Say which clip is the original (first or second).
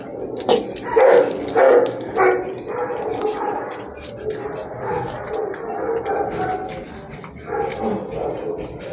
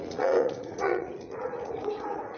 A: first